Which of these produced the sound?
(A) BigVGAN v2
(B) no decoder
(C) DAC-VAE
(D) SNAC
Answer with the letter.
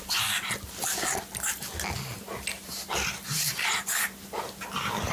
B